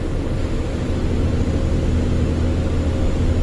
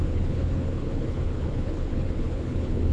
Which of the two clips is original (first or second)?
first